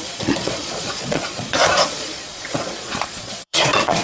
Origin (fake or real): fake